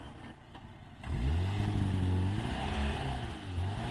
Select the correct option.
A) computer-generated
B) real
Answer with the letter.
B